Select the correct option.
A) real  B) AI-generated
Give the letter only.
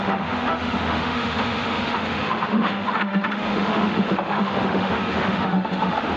B